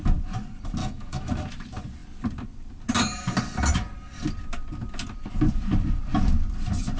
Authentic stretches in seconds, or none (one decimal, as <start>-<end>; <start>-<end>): 0.0-0.8; 1.3-7.0